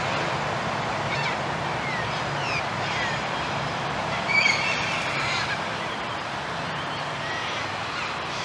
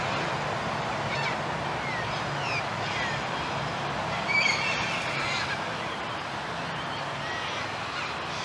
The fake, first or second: first